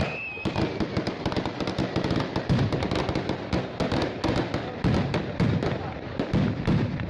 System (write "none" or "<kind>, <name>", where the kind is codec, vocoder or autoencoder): none